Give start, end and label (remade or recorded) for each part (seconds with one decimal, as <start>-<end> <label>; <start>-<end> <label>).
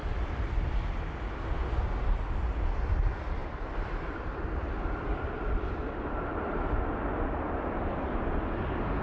0.0-0.7 remade; 0.7-3.4 recorded; 3.4-8.4 remade; 8.4-9.0 recorded